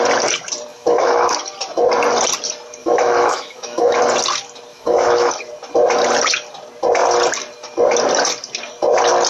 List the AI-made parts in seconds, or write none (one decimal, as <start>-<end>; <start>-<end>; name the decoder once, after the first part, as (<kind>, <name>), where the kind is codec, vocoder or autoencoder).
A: 0.7-1.4 (autoencoder, DAC-VAE); 2.8-4.0; 4.7-5.3